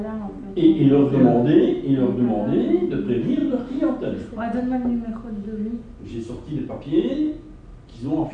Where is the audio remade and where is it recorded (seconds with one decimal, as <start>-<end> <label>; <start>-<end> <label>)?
0.0-8.3 recorded